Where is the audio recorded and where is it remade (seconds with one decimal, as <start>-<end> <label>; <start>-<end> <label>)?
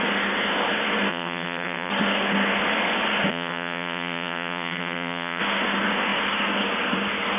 0.0-1.1 recorded; 1.1-1.9 remade; 1.9-3.3 recorded; 3.3-5.4 remade; 5.4-7.4 recorded